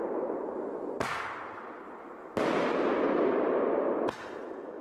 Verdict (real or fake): real